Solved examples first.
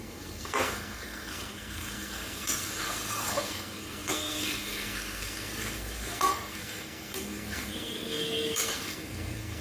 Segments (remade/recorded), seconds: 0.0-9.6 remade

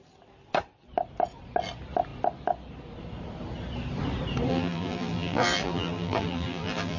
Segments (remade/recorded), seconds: 0.0-4.5 recorded; 4.5-7.0 remade

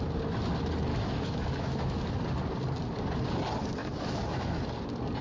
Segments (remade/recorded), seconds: 0.0-0.9 recorded; 0.9-2.1 remade; 2.1-3.8 recorded; 3.8-4.6 remade; 4.6-5.2 recorded

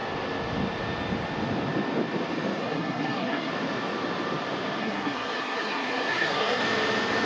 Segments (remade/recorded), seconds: 0.0-2.6 recorded; 2.6-3.5 remade; 3.5-4.8 recorded; 4.8-6.6 remade; 6.6-7.2 recorded